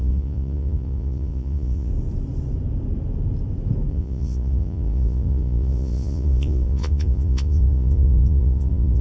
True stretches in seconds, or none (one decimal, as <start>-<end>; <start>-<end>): 1.9-3.9